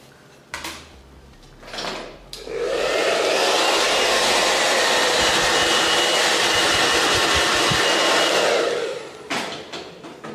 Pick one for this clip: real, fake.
real